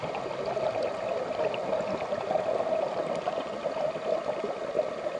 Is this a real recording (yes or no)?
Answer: yes